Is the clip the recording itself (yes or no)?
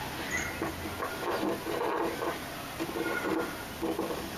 yes